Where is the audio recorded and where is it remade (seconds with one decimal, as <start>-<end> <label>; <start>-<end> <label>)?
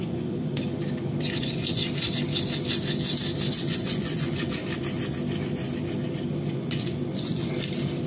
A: 0.0-0.6 remade; 0.6-1.4 recorded; 1.4-1.8 remade; 1.8-3.6 recorded; 3.6-4.6 remade; 4.6-6.5 recorded; 6.5-7.5 remade; 7.5-8.1 recorded